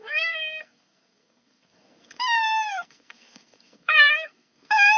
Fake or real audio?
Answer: fake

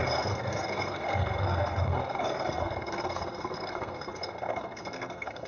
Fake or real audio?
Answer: fake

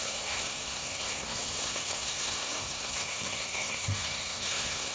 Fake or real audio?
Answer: fake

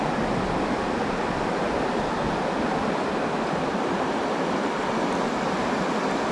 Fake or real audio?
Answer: real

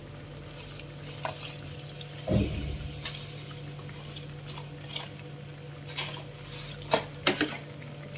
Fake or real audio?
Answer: real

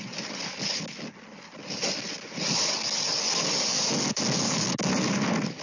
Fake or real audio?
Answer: real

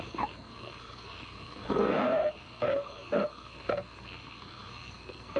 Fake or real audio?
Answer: fake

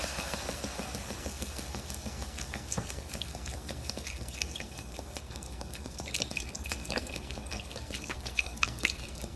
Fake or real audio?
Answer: fake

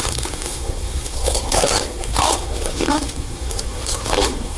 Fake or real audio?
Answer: fake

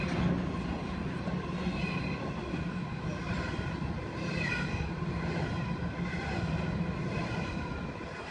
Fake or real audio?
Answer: real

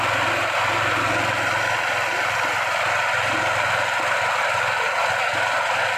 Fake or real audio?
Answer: real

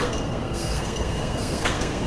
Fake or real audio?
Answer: fake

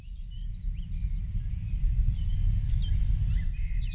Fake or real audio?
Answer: real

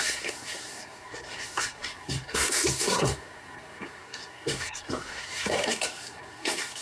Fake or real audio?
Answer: fake